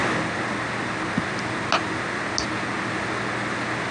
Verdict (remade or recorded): recorded